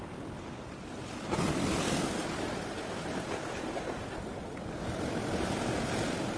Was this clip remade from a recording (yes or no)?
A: no